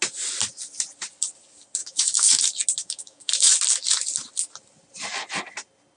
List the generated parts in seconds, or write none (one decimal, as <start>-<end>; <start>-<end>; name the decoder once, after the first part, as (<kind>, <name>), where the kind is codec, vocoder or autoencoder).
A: 1.8-2.4 (autoencoder, DAC-VAE); 2.8-3.5